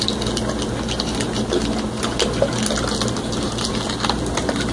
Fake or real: real